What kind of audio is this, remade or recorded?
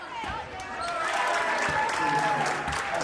recorded